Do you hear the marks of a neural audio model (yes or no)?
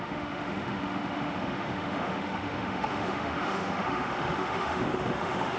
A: yes